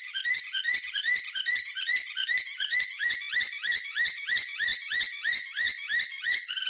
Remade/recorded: remade